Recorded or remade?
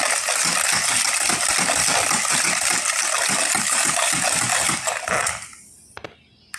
recorded